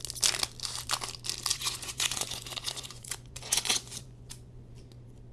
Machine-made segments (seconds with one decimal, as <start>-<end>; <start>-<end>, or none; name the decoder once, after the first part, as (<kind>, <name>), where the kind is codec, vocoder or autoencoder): 1.5-4.7 (vocoder, Vocos)